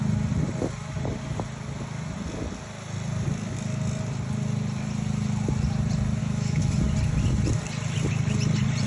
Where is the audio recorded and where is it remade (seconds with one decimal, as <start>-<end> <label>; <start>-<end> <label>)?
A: 0.0-6.2 recorded; 6.2-6.7 remade; 6.7-8.9 recorded